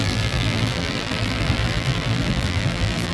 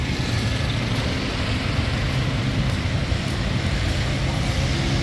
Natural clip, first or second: second